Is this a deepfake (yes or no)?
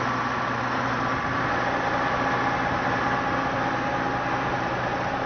no